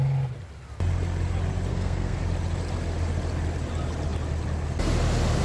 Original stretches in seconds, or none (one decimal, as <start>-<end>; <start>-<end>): 0.0-1.7; 2.2-5.4